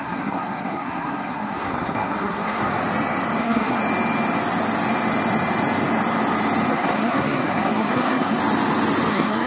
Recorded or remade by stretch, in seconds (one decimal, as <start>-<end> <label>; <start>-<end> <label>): 0.0-2.8 remade; 2.8-3.4 recorded; 3.4-3.8 remade; 3.8-6.7 recorded; 6.7-8.4 remade; 8.4-9.1 recorded; 9.1-9.5 remade